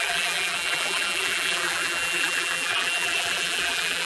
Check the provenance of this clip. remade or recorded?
remade